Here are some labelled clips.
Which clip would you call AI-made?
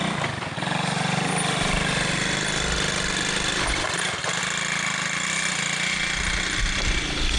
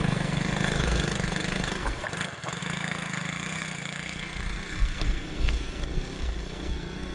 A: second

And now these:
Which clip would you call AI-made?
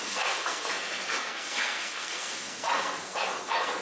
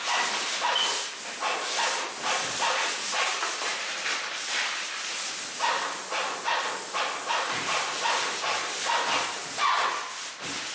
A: first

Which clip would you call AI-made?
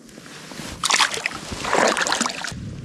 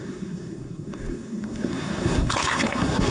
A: second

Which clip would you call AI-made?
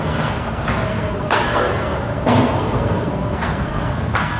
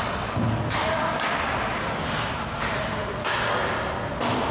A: first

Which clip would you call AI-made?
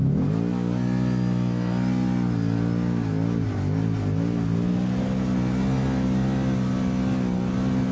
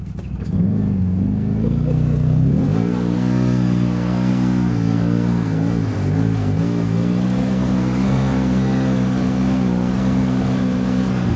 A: second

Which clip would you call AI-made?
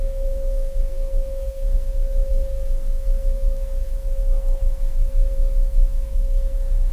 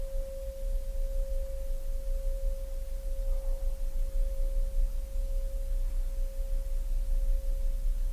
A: first